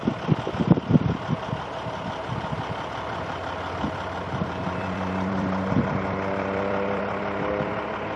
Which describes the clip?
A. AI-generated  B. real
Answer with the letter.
A